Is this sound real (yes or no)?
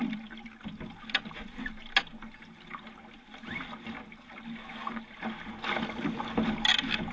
yes